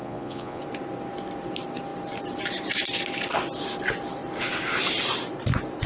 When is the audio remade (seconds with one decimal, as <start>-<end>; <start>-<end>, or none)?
0.0-0.6